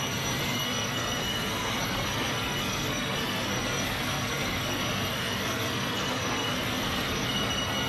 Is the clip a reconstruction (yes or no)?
yes